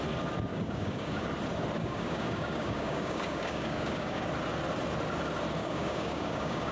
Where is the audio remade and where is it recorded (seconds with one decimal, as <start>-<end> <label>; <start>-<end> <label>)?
0.0-0.5 recorded; 0.5-1.3 remade; 1.3-1.8 recorded; 1.8-4.3 remade; 4.3-5.6 recorded; 5.6-6.7 remade